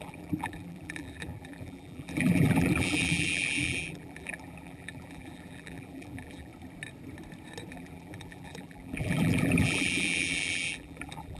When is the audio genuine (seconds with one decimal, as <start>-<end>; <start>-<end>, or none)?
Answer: 6.5-7.7